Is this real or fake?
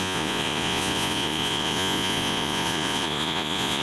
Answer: fake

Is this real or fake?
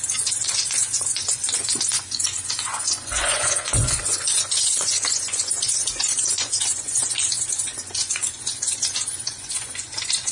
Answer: fake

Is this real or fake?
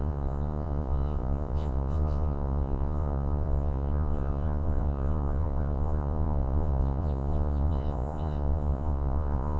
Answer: fake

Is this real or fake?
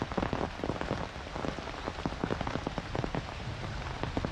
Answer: real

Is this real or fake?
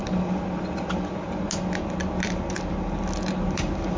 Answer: real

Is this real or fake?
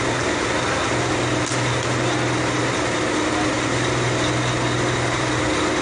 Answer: real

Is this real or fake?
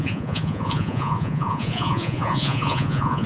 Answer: fake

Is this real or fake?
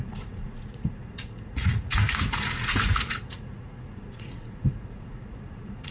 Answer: fake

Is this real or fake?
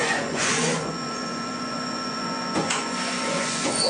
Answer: fake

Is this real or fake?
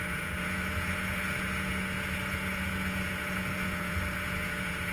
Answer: fake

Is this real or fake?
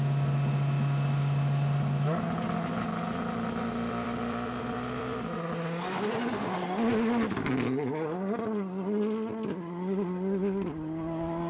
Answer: real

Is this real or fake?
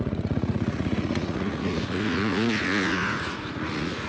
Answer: fake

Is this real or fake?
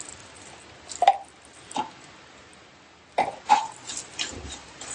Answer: real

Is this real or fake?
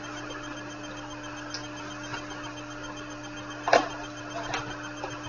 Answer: real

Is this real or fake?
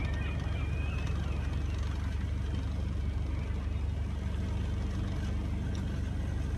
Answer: real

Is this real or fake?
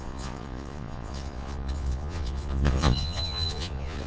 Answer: fake